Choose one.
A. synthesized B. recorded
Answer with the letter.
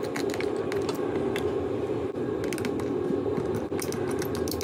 B